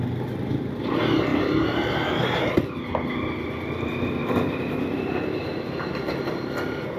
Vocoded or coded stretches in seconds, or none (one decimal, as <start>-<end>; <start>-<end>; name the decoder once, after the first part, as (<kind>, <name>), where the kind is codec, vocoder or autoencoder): 1.3-2.5 (vocoder, BigVGAN v2); 4.2-5.9

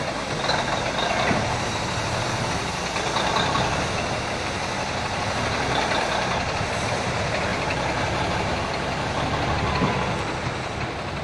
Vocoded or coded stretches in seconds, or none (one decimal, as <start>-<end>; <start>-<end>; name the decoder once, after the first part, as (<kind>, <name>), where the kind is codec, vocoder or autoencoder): 0.0-7.5 (vocoder, BigVGAN v2); 8.3-11.2

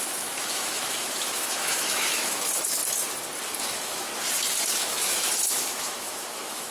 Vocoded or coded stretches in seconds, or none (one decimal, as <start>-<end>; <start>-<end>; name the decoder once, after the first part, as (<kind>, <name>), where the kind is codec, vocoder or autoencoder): 0.0-2.8 (autoencoder, DAC-VAE); 3.6-4.1; 4.7-6.7

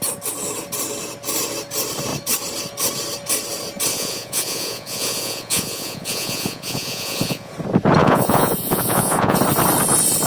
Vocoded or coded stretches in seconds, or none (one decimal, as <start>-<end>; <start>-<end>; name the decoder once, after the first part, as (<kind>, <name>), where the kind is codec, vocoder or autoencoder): 3.9-7.5 (vocoder, Vocos); 8.0-9.4

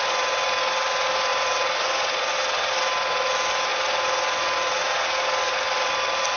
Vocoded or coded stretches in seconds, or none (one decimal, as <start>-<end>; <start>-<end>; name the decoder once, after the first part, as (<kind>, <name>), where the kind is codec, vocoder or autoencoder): none

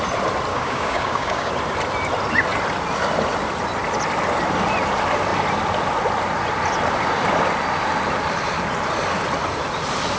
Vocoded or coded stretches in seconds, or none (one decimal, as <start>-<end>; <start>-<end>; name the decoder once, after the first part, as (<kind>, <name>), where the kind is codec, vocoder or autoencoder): 0.5-1.5 (codec, DAC)